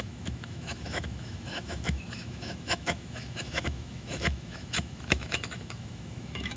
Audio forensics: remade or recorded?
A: remade